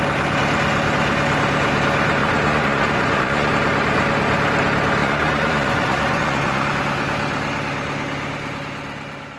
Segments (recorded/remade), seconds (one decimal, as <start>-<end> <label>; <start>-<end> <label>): 0.0-2.2 recorded; 2.2-3.5 remade; 3.5-5.0 recorded; 5.0-6.7 remade; 6.7-9.4 recorded